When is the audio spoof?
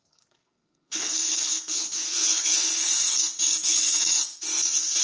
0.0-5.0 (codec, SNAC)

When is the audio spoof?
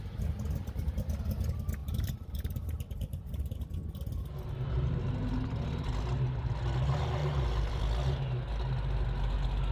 1.8-3.6 (vocoder, BigVGAN v2); 7.2-7.8